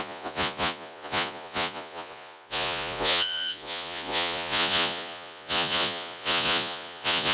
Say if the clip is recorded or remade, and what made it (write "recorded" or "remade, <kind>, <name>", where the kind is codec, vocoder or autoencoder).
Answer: remade, vocoder, Vocos